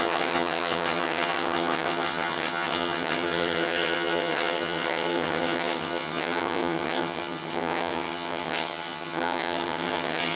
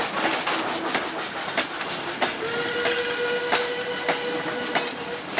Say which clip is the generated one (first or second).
first